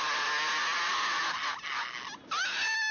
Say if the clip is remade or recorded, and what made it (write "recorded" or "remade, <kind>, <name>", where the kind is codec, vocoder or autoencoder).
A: recorded